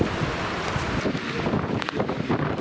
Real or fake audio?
real